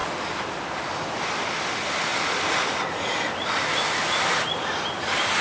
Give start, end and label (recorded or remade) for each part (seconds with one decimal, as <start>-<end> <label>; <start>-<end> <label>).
0.0-5.4 recorded